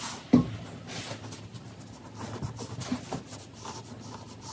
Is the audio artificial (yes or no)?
no